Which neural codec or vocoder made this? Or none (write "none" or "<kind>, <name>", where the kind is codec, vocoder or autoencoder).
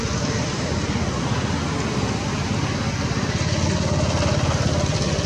none